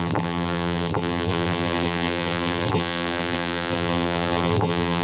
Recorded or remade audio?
remade